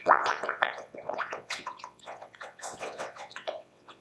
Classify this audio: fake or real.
fake